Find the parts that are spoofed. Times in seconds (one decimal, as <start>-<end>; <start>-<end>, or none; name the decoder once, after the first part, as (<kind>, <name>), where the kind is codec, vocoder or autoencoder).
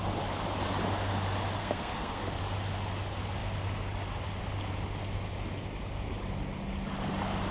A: 1.6-2.4 (codec, SNAC)